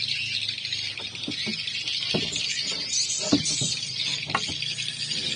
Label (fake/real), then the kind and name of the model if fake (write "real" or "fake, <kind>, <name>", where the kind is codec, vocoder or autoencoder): real